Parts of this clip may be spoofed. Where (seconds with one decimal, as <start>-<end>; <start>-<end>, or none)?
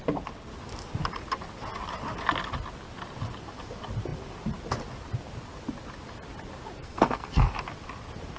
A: 6.8-7.5